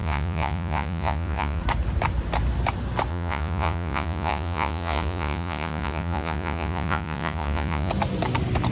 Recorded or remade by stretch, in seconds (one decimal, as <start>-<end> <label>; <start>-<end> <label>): 0.0-1.6 remade; 1.6-3.1 recorded; 3.1-7.9 remade; 7.9-8.7 recorded